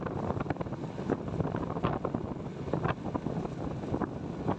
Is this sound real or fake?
real